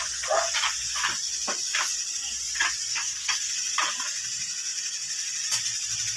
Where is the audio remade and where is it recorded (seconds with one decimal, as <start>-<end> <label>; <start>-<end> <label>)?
0.0-2.9 recorded; 2.9-3.5 remade; 3.5-6.2 recorded